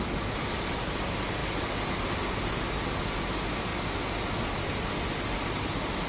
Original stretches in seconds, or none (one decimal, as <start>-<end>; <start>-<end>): 1.4-3.2; 3.7-5.1